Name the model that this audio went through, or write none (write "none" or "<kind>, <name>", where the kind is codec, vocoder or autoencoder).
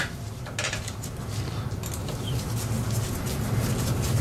none